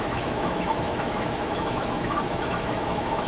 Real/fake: fake